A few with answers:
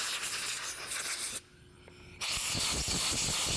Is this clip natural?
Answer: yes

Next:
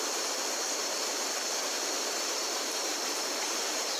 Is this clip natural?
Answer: no